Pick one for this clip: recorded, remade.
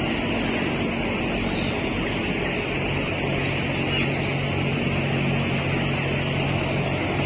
recorded